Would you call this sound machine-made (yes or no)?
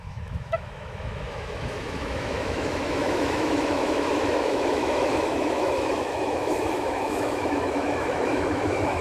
yes